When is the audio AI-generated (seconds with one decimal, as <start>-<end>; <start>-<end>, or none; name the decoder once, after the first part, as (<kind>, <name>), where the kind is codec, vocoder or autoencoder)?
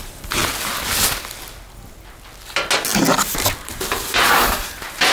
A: 0.0-0.4 (vocoder, BigVGAN v2); 3.5-5.1